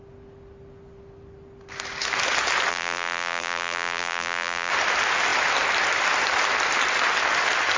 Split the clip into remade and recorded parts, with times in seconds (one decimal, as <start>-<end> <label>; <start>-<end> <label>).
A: 0.0-2.7 recorded; 2.7-4.7 remade; 4.7-7.8 recorded